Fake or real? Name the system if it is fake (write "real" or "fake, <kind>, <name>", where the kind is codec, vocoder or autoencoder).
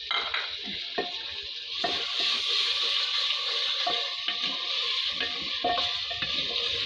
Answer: real